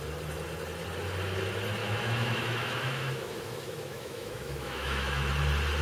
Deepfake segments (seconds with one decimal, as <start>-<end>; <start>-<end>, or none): 1.8-5.3